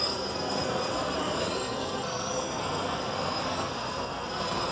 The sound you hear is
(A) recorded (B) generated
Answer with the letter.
B